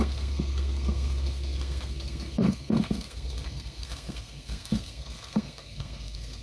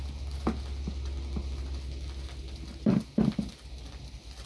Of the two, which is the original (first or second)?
second